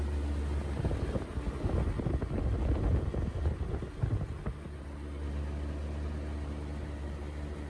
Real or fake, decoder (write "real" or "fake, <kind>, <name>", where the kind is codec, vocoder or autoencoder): real